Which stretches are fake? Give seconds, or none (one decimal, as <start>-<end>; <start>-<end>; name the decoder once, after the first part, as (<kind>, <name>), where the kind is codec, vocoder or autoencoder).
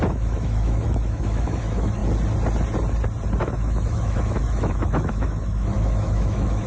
0.0-2.0 (autoencoder, DAC-VAE); 3.4-6.7